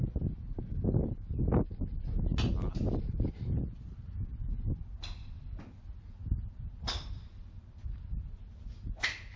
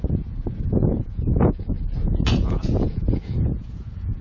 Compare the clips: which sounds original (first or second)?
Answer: first